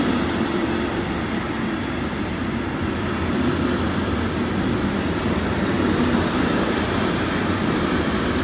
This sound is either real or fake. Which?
real